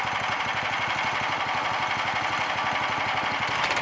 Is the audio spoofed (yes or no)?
no